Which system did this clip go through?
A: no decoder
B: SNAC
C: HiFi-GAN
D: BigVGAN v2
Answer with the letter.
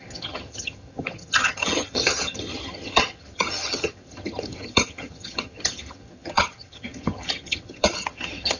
C